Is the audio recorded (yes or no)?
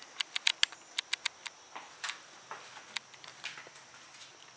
yes